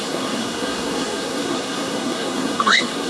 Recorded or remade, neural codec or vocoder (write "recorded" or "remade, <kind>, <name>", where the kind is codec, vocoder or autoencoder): remade, codec, SNAC